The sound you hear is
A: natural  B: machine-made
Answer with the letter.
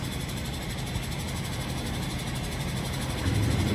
A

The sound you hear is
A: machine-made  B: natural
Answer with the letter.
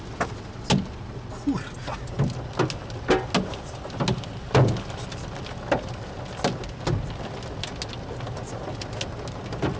B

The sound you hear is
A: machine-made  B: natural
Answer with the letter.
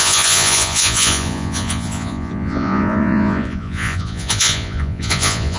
A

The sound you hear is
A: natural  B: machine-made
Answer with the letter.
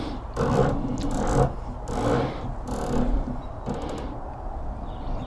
A